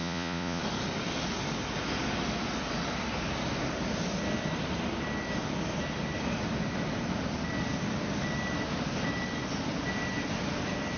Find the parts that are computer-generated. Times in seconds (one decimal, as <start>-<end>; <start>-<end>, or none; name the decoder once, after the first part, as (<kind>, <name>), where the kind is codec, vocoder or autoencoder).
0.0-0.6 (vocoder, Vocos)